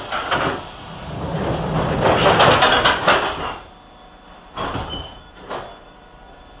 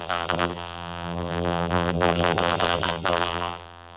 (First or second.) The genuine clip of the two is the first